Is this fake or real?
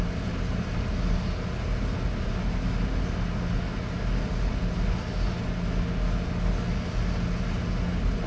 real